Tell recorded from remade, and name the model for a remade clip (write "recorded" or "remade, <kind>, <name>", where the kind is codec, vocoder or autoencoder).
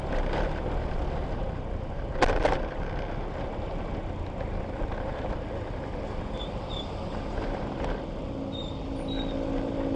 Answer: recorded